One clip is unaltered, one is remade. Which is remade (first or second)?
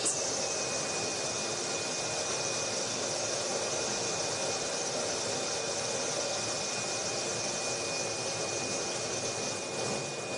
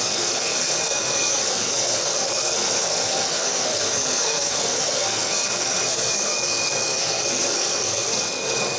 second